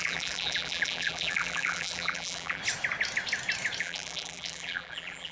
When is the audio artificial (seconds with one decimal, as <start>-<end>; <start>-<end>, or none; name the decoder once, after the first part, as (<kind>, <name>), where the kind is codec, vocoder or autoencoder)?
0.0-2.6 (vocoder, BigVGAN v2); 3.8-5.3